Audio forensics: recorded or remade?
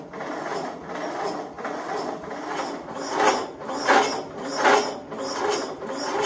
recorded